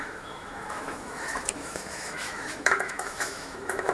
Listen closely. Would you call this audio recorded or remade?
remade